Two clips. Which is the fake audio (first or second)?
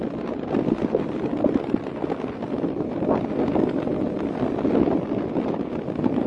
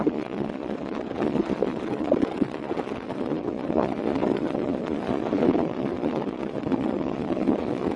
second